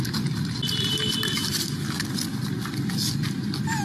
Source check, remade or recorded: recorded